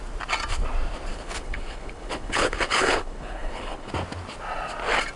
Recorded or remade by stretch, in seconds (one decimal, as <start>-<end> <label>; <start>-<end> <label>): 0.0-1.1 recorded; 1.1-3.9 remade; 3.9-5.2 recorded